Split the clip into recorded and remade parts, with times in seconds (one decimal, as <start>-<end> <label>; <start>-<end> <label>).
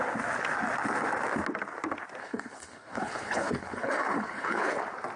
0.0-2.2 recorded; 2.2-4.8 remade; 4.8-5.2 recorded